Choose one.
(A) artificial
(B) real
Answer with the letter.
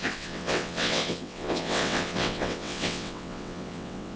A